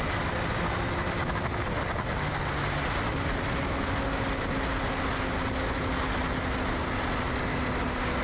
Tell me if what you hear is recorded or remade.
recorded